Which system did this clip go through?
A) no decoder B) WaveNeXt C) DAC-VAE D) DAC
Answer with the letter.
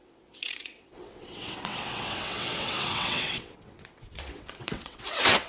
B